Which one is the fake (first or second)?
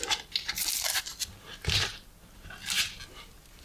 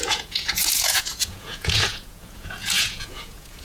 second